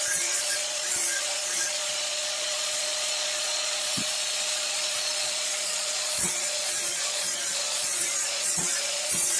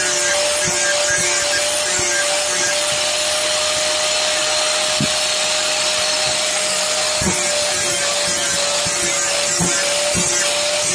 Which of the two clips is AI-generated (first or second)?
first